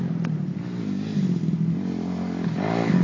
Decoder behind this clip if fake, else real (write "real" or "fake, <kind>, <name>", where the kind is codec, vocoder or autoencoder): real